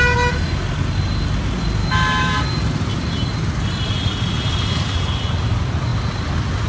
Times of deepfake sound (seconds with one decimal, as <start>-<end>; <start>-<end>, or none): 1.8-2.4